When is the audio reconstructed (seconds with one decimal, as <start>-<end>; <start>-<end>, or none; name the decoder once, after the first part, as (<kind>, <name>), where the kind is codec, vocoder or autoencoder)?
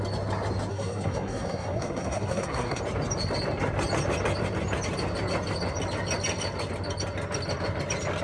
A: 0.7-2.8 (codec, SNAC)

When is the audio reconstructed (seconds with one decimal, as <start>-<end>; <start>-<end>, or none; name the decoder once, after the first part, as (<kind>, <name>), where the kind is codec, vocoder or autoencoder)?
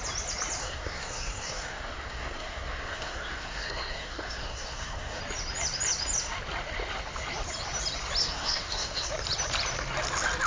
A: 0.6-5.2 (codec, SNAC); 8.2-9.1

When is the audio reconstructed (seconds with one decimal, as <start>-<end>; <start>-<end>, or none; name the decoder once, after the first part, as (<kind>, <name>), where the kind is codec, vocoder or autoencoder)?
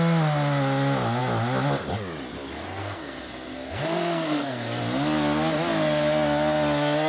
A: 2.8-4.8 (codec, SNAC)